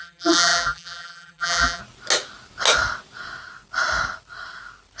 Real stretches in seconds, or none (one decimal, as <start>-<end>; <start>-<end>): 1.8-5.0